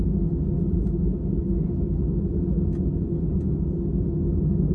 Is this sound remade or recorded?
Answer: recorded